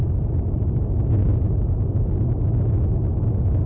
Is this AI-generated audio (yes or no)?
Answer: no